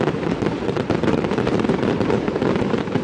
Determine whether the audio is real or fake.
fake